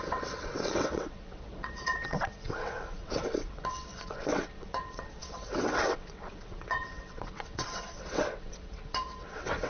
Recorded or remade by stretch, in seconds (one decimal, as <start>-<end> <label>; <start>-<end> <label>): 0.0-9.7 remade